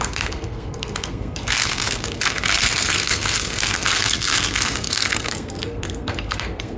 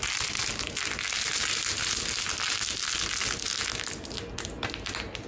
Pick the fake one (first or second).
first